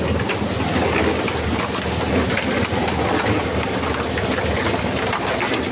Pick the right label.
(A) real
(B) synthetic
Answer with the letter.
A